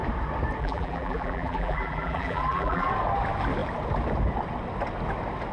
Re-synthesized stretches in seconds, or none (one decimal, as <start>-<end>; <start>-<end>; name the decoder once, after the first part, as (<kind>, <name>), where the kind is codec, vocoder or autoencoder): 0.6-2.9 (vocoder, BigVGAN v2)